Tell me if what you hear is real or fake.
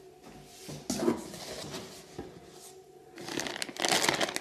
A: real